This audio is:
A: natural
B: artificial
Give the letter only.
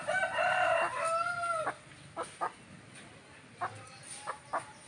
A